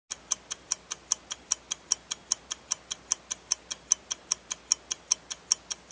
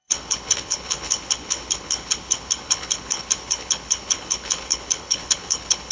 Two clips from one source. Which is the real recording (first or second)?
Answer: first